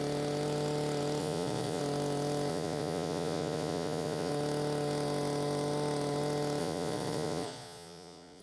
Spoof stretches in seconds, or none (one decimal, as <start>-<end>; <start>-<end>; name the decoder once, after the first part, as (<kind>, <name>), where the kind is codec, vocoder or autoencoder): 1.2-1.8 (vocoder, Vocos); 2.5-4.3; 6.6-8.4